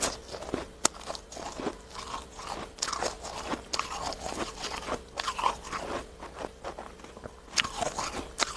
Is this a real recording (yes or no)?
yes